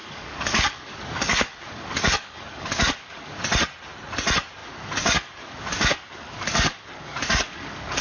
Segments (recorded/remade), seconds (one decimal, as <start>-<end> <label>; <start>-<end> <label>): 0.0-3.4 remade; 3.4-4.6 recorded; 4.6-8.0 remade